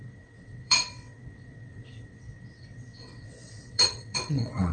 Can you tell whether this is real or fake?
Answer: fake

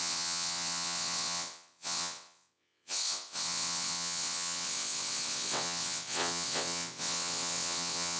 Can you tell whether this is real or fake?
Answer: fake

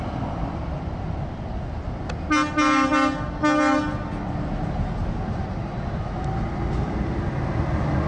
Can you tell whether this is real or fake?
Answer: real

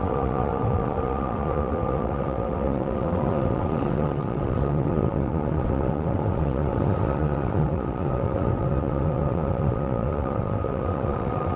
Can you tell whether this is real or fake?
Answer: fake